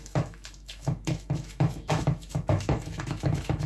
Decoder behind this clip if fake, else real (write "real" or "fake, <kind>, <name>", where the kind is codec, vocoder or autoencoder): fake, autoencoder, DAC-VAE